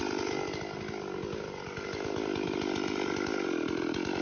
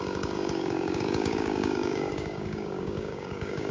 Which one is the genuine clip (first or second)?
first